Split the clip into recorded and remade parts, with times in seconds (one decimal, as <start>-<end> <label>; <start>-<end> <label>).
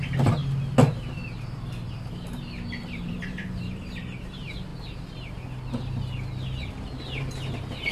0.0-2.8 recorded; 2.8-3.9 remade; 3.9-7.9 recorded